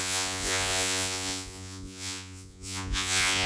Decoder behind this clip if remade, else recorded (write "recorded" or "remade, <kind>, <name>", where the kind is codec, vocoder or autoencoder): remade, vocoder, Vocos